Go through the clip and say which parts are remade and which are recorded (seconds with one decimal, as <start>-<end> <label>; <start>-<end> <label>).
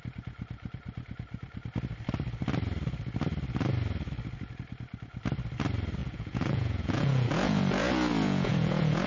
0.0-6.0 recorded; 6.0-9.1 remade